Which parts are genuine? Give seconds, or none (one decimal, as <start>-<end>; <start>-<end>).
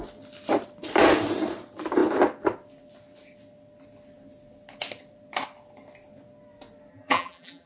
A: 0.0-6.9